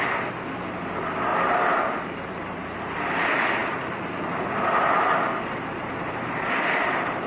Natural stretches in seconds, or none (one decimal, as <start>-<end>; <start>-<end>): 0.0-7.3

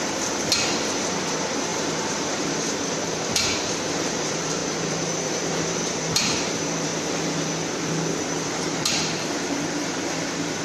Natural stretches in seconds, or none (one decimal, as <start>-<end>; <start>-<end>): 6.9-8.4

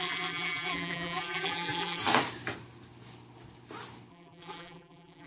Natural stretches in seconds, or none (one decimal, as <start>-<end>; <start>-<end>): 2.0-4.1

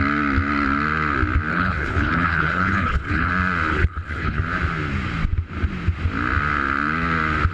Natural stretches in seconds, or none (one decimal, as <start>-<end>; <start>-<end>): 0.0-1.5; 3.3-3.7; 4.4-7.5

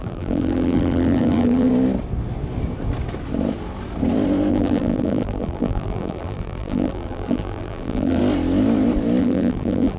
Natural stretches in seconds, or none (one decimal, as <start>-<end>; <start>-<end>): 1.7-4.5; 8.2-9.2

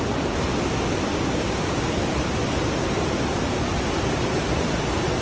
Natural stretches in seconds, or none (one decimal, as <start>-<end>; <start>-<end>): 0.0-1.1; 1.8-5.2